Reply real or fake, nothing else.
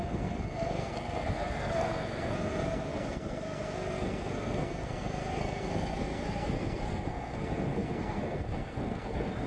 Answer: fake